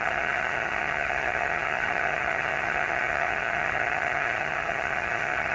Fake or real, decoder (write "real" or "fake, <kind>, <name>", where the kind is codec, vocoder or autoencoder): fake, vocoder, HiFi-GAN